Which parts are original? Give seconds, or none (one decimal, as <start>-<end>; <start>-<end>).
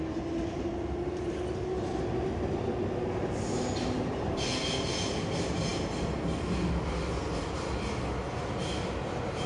0.0-9.5